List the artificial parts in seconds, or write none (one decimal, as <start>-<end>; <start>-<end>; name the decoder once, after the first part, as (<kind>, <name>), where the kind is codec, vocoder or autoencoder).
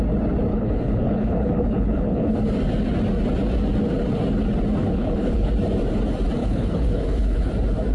0.5-2.3 (codec, HILCodec); 4.8-5.5; 6.4-7.5